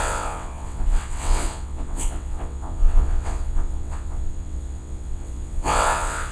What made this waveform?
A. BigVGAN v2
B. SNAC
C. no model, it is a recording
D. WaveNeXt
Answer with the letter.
D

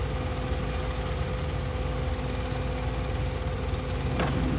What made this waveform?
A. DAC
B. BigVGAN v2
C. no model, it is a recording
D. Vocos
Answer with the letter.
C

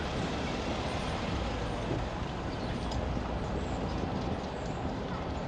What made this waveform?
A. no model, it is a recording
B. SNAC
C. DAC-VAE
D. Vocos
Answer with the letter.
A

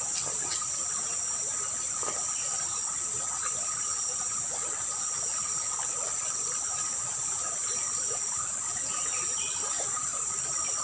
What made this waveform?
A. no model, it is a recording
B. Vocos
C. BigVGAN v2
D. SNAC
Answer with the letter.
A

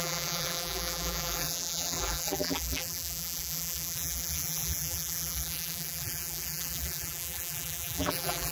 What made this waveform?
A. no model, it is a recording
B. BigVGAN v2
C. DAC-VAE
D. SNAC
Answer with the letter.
B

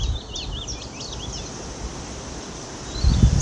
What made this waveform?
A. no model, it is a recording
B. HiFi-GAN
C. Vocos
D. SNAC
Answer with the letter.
A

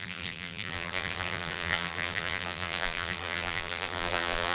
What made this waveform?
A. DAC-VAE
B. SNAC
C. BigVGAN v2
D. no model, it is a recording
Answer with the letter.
C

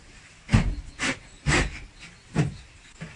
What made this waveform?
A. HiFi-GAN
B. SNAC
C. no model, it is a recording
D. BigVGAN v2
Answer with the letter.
C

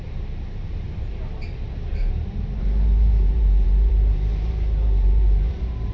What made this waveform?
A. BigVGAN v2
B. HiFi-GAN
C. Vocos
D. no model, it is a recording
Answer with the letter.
A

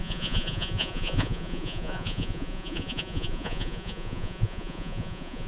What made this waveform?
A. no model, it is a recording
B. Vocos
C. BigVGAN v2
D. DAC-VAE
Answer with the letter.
B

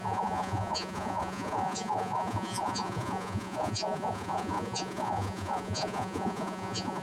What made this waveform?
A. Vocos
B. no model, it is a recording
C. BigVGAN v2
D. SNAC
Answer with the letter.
A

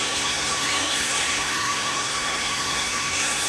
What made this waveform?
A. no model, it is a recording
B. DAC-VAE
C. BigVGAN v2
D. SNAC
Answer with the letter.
D